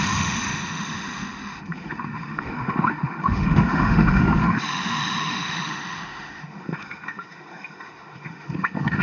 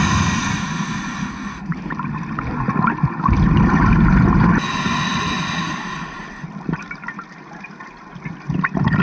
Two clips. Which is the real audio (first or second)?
second